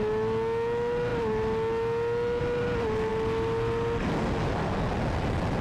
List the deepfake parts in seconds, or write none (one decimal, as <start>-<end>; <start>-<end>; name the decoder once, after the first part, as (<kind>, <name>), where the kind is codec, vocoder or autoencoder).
none